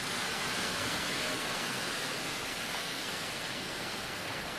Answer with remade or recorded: remade